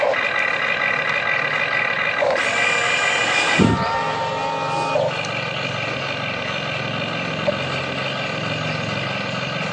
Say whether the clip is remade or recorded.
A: recorded